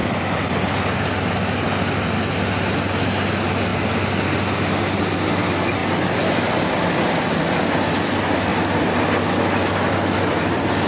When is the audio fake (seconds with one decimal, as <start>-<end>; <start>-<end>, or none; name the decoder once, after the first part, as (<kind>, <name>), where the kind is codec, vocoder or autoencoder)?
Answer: 0.0-0.5 (vocoder, BigVGAN v2); 8.5-9.1